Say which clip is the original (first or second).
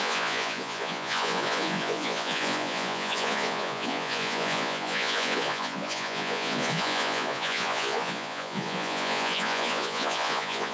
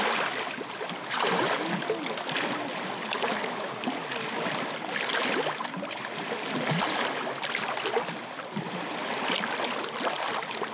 second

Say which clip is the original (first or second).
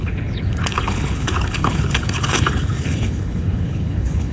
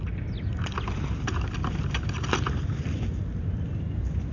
second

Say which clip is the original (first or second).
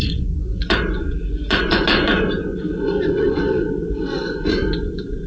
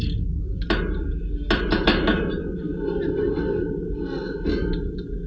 second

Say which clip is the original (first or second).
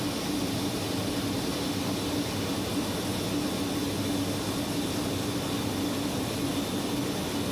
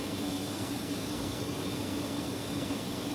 first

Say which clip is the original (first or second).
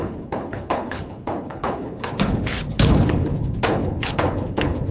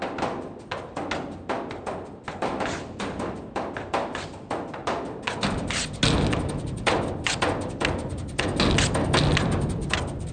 second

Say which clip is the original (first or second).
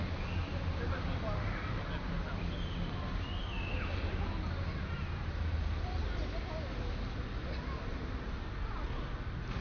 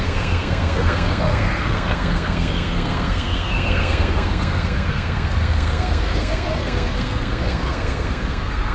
first